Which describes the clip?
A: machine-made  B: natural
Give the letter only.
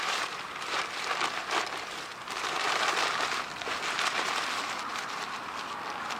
B